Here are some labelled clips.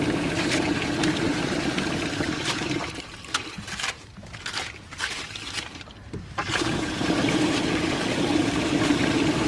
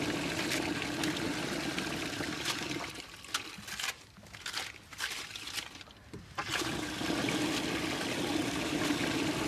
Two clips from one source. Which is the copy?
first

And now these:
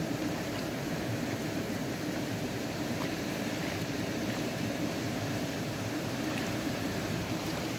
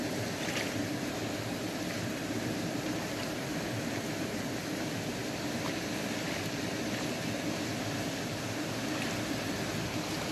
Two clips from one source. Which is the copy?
first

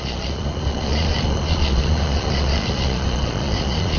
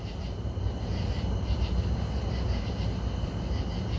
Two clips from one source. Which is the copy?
first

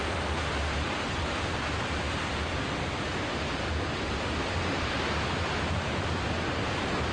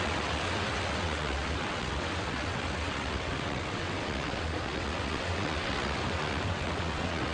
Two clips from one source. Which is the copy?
second